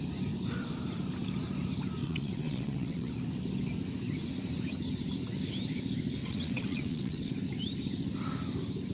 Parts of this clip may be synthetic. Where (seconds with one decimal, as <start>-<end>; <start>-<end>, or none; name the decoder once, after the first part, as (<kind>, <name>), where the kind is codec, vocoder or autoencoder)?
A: 2.0-3.1 (vocoder, WaveNeXt); 6.2-7.3